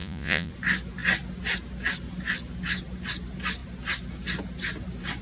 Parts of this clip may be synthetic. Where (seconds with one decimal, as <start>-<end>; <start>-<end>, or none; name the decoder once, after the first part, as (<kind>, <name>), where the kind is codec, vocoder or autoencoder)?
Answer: 0.0-0.5 (vocoder, Vocos)